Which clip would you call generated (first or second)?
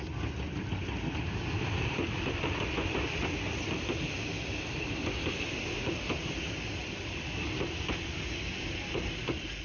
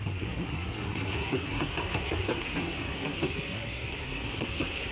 second